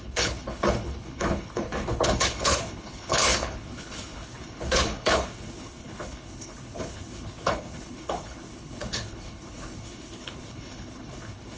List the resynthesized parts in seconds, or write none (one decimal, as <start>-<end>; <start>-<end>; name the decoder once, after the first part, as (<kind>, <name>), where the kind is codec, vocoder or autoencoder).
0.0-11.6 (codec, HILCodec)